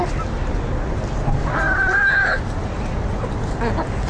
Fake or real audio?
real